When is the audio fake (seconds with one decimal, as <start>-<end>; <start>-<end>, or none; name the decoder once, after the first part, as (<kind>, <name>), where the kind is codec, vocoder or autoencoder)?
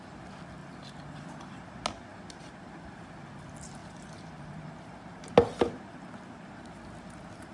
0.6-1.7 (vocoder, BigVGAN v2); 2.1-2.9; 3.8-5.3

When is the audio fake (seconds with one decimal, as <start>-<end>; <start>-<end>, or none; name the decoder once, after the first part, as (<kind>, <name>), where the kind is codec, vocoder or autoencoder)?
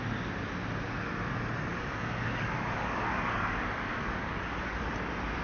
1.7-4.9 (codec, DAC)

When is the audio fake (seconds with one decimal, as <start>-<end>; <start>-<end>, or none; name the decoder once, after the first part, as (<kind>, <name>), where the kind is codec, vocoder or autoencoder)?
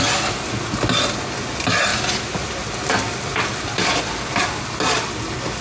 none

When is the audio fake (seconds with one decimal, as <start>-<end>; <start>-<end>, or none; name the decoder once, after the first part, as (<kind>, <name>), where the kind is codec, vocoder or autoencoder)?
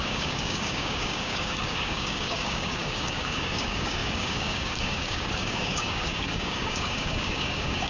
0.0-7.9 (codec, DAC)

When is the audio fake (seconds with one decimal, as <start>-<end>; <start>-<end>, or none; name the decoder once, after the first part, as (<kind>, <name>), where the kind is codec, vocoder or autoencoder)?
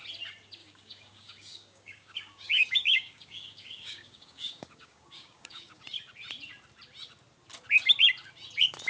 0.6-5.8 (codec, DAC)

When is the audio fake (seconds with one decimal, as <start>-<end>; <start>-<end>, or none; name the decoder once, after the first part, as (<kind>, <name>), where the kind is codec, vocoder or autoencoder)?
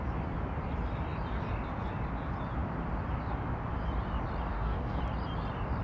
4.5-5.0 (codec, DAC)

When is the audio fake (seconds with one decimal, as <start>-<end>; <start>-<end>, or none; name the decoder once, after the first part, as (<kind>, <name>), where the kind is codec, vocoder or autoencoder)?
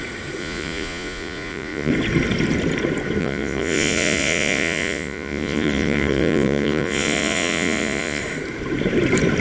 0.4-1.9 (vocoder, Vocos); 3.2-8.2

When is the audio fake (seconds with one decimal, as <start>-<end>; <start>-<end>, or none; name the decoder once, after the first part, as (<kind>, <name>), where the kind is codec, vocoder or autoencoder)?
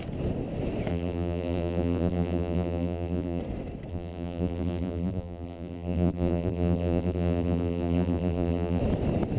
0.9-3.4 (vocoder, BigVGAN v2); 3.9-8.8